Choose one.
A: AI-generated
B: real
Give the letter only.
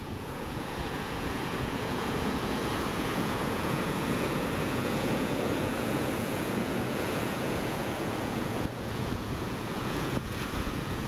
A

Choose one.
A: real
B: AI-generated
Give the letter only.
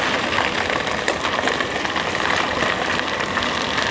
A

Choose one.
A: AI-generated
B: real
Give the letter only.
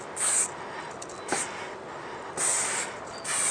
B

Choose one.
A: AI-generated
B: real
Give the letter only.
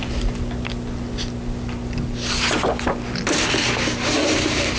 B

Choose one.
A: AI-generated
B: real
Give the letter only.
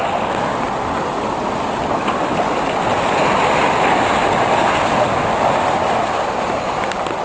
B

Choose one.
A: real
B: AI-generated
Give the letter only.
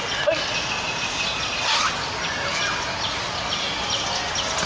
A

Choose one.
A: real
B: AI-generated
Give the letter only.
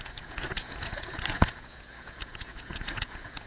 B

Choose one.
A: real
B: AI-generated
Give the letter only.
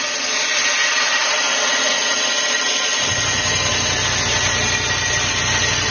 A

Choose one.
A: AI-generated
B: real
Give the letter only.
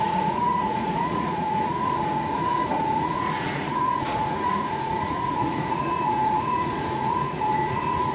A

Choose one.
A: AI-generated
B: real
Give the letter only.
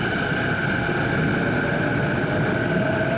B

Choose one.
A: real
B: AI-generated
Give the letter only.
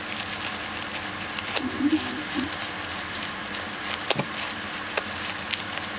A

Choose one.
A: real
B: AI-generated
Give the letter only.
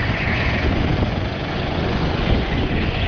B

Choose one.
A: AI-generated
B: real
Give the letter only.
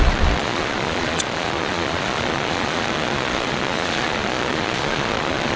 A